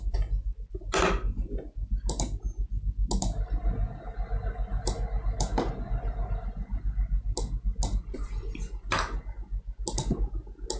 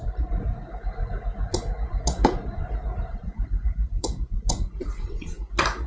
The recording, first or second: first